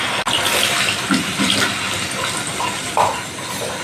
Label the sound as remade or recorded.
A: recorded